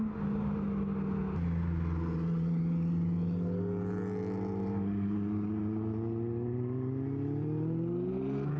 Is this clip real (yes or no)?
yes